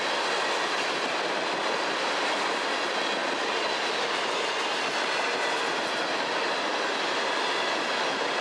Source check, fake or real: real